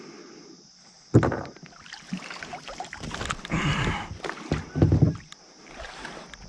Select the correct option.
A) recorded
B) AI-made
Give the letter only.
A